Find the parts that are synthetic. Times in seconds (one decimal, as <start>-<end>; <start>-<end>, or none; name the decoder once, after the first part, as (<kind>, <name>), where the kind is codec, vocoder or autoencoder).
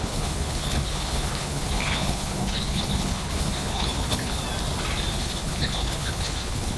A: 0.0-4.4 (codec, HILCodec); 5.1-6.8